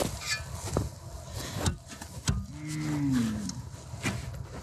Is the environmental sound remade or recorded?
recorded